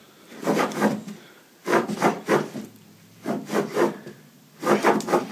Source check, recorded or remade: recorded